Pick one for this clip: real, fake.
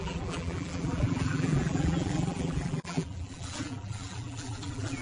fake